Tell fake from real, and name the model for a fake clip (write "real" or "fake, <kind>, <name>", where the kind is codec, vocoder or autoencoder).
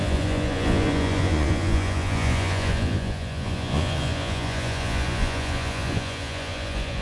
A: fake, vocoder, Vocos